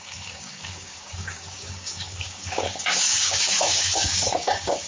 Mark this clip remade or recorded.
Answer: remade